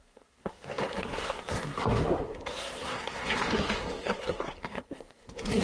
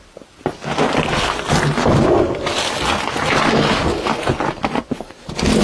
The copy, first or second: first